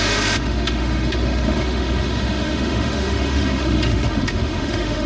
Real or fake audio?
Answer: fake